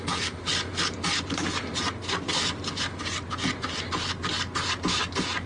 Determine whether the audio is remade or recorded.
recorded